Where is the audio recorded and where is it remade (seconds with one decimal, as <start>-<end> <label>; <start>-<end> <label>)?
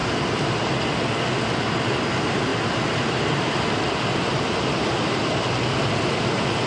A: 0.0-6.7 recorded